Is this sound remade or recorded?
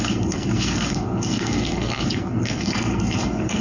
remade